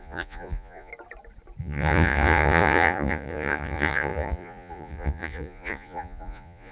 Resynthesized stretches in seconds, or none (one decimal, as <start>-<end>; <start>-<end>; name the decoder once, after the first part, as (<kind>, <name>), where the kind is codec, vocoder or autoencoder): 0.0-0.9 (vocoder, Vocos); 1.6-6.7

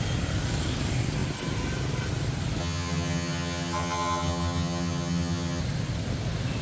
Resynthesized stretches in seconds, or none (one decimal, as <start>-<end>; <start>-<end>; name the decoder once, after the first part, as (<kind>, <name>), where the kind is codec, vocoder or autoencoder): 2.6-5.6 (vocoder, HiFi-GAN)

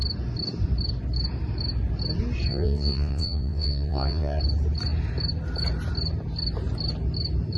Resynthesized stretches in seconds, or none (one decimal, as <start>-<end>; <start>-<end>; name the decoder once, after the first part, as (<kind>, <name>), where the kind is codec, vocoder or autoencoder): 2.5-4.4 (vocoder, WaveNeXt)

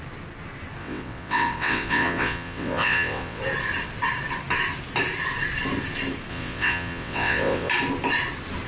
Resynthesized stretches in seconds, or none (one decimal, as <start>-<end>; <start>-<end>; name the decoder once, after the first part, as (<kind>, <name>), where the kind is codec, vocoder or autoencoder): 0.8-3.4 (vocoder, WaveNeXt); 6.3-7.7

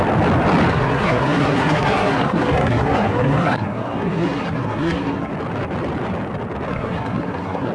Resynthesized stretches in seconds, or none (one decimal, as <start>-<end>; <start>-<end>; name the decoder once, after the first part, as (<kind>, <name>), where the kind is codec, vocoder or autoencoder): 0.7-5.3 (codec, SNAC); 6.7-7.7

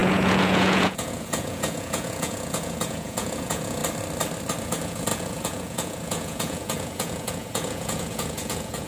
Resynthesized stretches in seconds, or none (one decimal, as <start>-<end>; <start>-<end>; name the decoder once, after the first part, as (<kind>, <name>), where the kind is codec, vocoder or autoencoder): 0.0-3.8 (vocoder, Vocos); 4.6-8.9

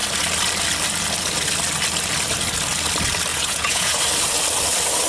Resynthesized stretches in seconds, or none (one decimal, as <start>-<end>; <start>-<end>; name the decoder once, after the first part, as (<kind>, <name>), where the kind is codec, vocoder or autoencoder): 3.3-4.0 (vocoder, Vocos)